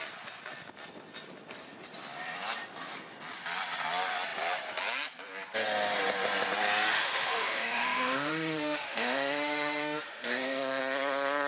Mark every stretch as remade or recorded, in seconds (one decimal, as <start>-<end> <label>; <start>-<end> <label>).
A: 0.0-6.9 recorded; 6.9-10.8 remade; 10.8-11.5 recorded